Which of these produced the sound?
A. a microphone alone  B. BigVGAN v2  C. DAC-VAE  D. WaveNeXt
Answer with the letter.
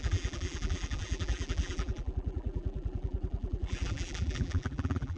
B